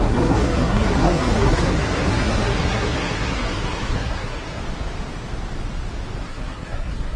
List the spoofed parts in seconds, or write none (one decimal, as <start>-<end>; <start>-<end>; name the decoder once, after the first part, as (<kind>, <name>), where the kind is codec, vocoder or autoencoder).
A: 0.0-4.6 (codec, SNAC); 6.2-7.2